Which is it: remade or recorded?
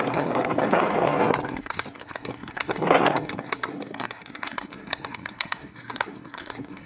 remade